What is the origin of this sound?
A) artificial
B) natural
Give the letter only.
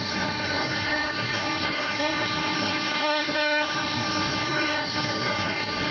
A